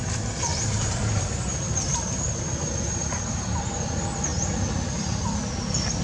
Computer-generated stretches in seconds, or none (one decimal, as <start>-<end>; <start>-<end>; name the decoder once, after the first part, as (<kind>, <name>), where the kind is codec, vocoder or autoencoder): 0.0-4.3 (vocoder, BigVGAN v2)